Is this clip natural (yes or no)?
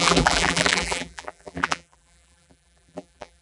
no